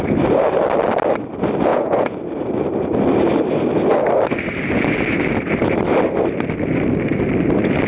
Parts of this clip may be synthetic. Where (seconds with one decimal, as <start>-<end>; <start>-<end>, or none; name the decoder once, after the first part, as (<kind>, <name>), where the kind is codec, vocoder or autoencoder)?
1.7-2.2 (vocoder, Vocos)